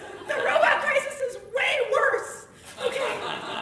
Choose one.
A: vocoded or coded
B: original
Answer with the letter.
A